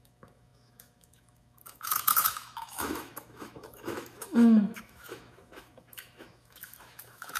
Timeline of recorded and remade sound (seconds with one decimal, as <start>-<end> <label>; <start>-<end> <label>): 0.0-7.4 remade